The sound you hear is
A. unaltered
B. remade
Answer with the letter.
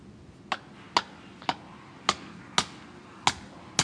A